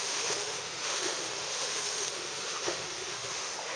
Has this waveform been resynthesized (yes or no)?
yes